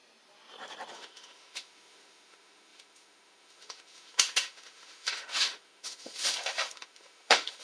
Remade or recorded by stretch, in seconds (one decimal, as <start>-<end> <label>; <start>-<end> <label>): 0.0-0.9 recorded; 0.9-7.6 remade